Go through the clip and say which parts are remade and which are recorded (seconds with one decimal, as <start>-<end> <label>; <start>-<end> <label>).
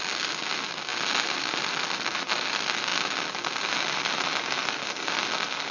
0.0-5.7 recorded